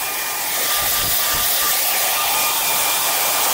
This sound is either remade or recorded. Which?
recorded